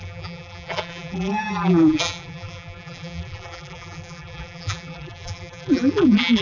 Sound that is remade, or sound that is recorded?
remade